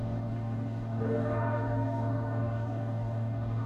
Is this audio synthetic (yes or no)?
yes